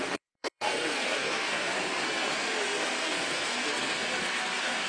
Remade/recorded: remade